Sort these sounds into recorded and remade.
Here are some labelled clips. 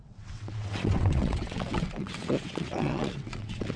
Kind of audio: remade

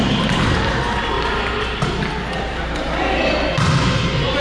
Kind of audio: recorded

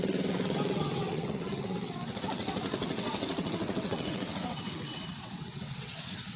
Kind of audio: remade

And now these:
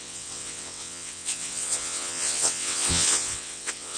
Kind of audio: remade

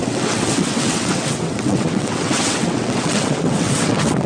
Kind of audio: remade